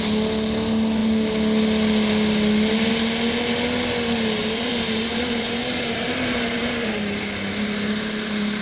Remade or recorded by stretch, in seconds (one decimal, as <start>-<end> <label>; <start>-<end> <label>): 0.0-4.4 recorded; 4.4-8.6 remade